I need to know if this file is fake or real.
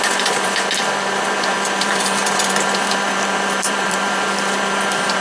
fake